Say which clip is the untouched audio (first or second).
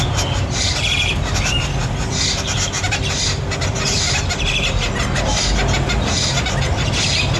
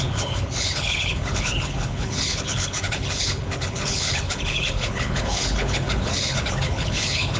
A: first